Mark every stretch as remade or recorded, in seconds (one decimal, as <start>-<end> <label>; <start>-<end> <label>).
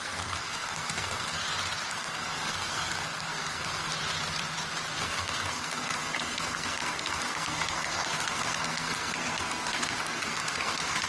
0.0-1.4 remade; 1.4-1.9 recorded; 1.9-3.9 remade; 3.9-5.0 recorded; 5.0-11.1 remade